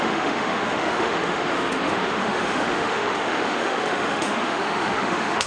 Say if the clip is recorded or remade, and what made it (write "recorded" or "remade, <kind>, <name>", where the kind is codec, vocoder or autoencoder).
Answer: remade, autoencoder, DAC-VAE